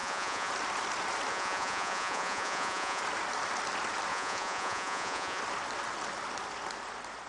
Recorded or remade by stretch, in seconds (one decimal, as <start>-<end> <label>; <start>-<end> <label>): 0.0-0.5 remade; 0.5-1.3 recorded; 1.3-3.0 remade; 3.0-4.1 recorded; 4.1-5.4 remade; 5.4-7.3 recorded

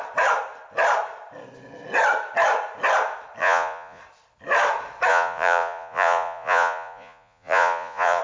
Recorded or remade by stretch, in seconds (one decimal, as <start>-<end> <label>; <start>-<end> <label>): 0.0-3.4 recorded; 3.4-4.0 remade; 4.0-5.1 recorded; 5.1-8.2 remade

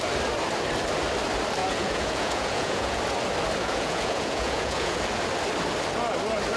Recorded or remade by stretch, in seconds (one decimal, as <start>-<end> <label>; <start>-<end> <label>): 0.0-1.6 recorded; 1.6-3.0 remade; 3.0-3.6 recorded; 3.6-5.0 remade; 5.0-6.6 recorded

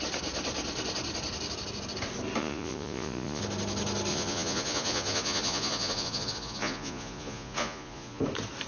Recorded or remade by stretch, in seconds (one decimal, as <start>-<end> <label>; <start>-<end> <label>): 0.0-2.4 recorded; 2.4-3.4 remade; 3.4-4.1 recorded; 4.1-8.2 remade; 8.2-8.7 recorded

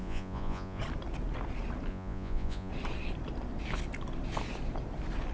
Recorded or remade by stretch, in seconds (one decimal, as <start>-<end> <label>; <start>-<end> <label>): 0.0-0.8 remade; 0.8-1.9 recorded; 1.9-2.7 remade; 2.7-5.3 recorded